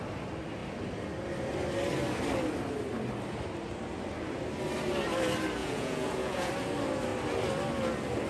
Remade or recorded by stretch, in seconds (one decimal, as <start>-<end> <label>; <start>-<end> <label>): 0.0-5.6 recorded; 5.6-6.5 remade; 6.5-8.3 recorded